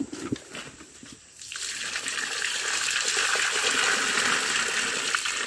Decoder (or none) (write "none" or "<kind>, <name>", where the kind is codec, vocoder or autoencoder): none